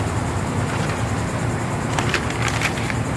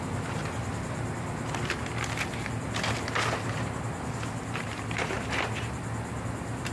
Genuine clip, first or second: second